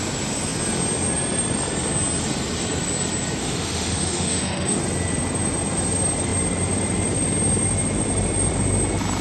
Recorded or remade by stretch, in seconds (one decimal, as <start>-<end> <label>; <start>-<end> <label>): 0.0-3.4 recorded; 3.4-4.8 remade; 4.8-9.2 recorded